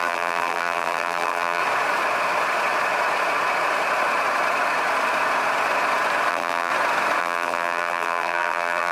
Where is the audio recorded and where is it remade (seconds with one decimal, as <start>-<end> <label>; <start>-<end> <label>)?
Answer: 0.0-1.6 remade; 1.6-6.3 recorded; 6.3-6.7 remade; 6.7-7.2 recorded; 7.2-8.9 remade